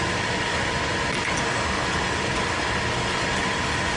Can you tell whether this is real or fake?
real